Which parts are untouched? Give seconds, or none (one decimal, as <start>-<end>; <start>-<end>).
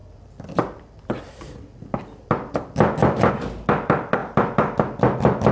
none